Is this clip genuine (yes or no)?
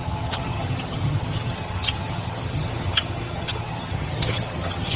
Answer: no